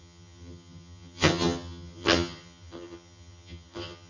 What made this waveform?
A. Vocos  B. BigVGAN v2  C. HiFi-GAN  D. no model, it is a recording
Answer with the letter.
C